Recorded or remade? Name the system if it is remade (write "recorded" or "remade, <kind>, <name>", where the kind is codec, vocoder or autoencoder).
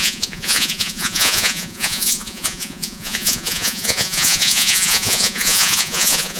remade, vocoder, Vocos